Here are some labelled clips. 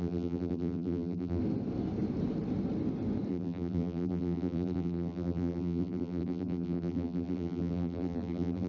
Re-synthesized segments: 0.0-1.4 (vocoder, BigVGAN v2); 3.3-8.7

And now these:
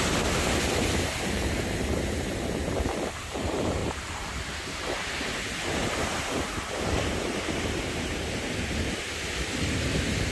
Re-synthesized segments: 0.0-10.3 (vocoder, BigVGAN v2)

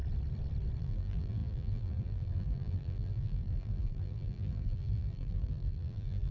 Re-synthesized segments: 0.8-6.3 (vocoder, BigVGAN v2)

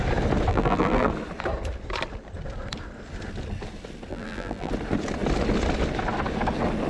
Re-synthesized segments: 0.5-1.1 (vocoder, BigVGAN v2); 4.1-4.7

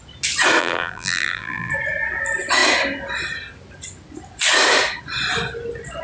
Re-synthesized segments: 0.6-1.7 (vocoder, BigVGAN v2)

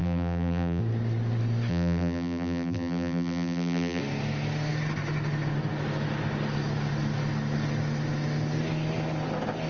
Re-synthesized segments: 0.0-0.8 (vocoder, BigVGAN v2); 1.7-4.0

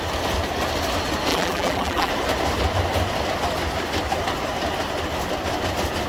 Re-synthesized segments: 1.3-2.1 (vocoder, BigVGAN v2)